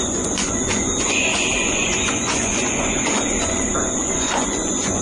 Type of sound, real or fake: fake